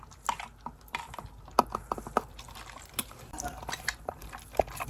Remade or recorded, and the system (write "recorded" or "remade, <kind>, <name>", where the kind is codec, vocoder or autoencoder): recorded